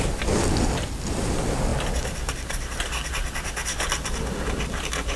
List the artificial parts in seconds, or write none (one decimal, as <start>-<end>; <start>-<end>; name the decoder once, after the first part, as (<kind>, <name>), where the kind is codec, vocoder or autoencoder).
none